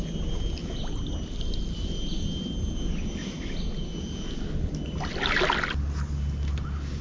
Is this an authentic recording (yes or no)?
yes